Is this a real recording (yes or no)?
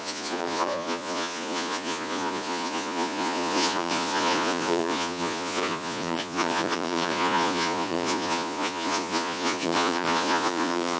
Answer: no